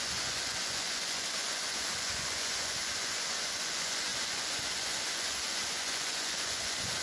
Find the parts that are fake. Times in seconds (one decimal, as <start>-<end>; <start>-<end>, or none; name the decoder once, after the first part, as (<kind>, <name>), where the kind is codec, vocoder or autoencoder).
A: 0.0-7.0 (vocoder, Vocos)